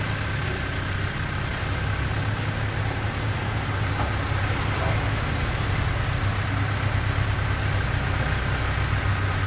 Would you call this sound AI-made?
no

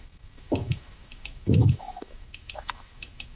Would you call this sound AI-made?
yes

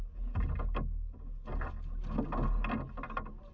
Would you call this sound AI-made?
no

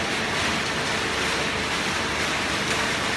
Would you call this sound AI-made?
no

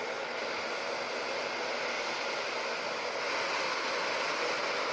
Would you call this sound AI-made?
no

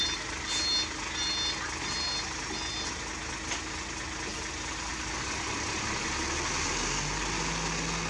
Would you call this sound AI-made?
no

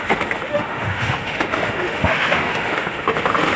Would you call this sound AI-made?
yes